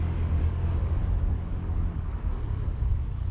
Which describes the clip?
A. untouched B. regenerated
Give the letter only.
B